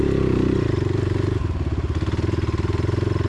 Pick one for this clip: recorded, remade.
recorded